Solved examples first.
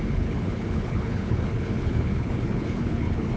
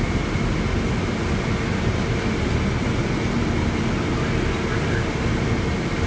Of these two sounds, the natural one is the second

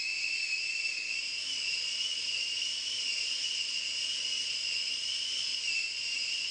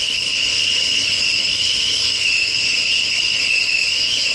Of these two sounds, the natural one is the first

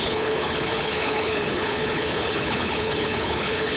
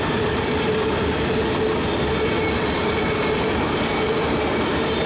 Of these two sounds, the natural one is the second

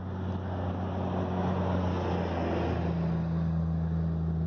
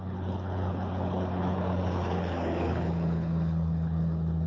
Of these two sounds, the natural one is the first